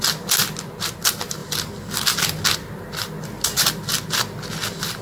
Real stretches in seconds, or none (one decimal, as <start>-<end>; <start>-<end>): 0.0-5.0